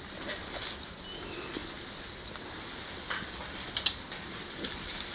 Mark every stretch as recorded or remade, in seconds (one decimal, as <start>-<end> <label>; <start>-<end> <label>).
0.0-5.1 recorded